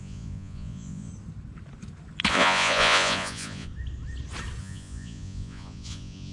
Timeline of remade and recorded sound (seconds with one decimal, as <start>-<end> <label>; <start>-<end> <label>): 0.0-1.1 remade; 1.1-2.3 recorded; 2.3-3.7 remade; 3.7-4.6 recorded; 4.6-6.3 remade